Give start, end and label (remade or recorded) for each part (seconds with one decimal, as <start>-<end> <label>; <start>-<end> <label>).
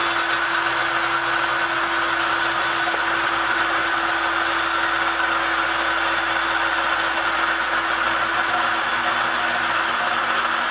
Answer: 0.0-10.7 recorded